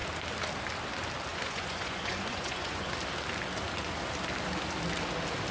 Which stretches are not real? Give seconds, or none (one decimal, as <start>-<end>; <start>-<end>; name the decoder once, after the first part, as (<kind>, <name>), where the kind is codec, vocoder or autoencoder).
1.3-2.9 (vocoder, Vocos)